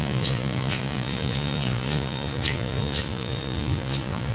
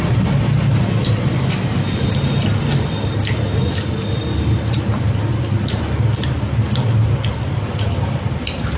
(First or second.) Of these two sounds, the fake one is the first